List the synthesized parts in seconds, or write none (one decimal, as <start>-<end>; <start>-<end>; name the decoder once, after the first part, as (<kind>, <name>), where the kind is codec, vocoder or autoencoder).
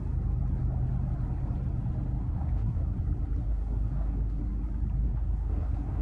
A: 2.2-3.0 (codec, SNAC); 3.4-4.4; 5.0-6.0